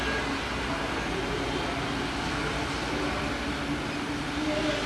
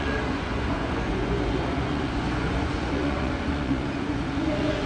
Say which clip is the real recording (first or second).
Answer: first